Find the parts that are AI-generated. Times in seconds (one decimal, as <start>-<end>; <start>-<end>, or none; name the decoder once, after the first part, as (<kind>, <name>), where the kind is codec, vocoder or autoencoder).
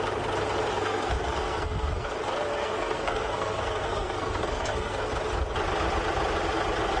0.7-2.1 (codec, SNAC); 2.6-5.1